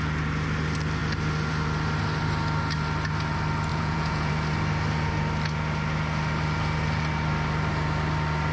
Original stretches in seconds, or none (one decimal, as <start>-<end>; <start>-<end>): 0.0-3.7; 4.3-8.5